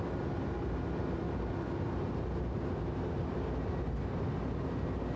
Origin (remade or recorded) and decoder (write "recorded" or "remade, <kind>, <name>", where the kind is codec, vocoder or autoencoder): recorded